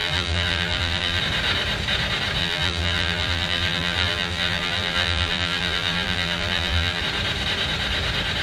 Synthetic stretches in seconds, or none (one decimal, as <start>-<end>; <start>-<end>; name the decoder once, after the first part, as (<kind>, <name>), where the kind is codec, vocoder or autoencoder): 0.0-1.2 (vocoder, BigVGAN v2); 2.4-7.0